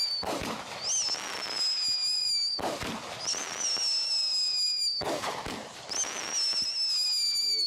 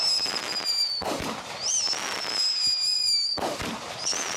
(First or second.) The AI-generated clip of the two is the second